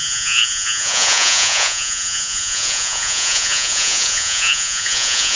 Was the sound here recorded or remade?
remade